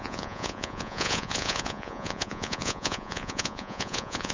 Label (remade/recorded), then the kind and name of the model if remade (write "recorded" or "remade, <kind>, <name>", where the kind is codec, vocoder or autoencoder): remade, vocoder, Vocos